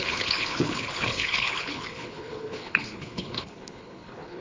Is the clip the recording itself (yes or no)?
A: no